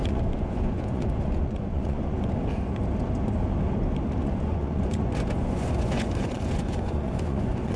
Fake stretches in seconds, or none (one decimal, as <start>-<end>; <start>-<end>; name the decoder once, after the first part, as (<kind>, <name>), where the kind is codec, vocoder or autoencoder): 0.0-2.3 (vocoder, Vocos); 4.2-7.8